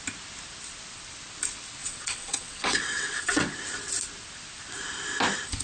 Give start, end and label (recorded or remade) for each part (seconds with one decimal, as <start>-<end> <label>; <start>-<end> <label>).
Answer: 0.0-1.8 recorded; 1.8-3.5 remade; 3.5-5.6 recorded